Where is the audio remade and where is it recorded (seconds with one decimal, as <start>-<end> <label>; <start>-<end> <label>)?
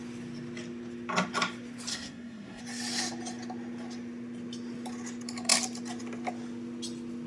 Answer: 0.0-1.9 recorded; 1.9-2.6 remade; 2.6-7.3 recorded